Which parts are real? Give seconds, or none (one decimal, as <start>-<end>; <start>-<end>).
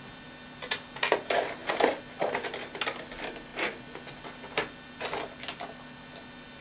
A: 0.0-6.6